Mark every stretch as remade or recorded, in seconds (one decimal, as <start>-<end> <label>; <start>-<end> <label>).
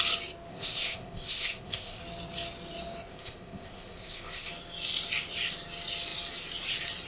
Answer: 0.0-0.5 recorded; 0.5-2.0 remade; 2.0-3.1 recorded; 3.1-4.5 remade; 4.5-7.1 recorded